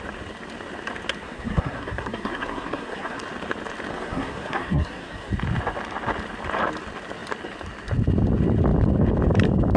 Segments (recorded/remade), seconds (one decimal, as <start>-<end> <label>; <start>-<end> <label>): 0.0-1.2 recorded; 1.2-3.2 remade; 3.2-3.9 recorded; 3.9-5.3 remade; 5.3-9.8 recorded